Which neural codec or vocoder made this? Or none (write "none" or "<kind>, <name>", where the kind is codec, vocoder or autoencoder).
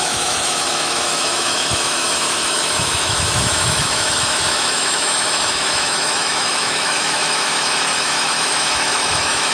autoencoder, DAC-VAE